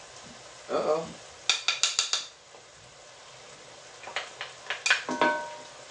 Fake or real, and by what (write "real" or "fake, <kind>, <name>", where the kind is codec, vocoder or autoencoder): real